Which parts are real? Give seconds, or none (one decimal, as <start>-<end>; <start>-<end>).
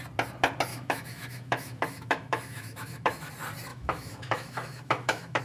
0.0-0.7; 3.3-3.7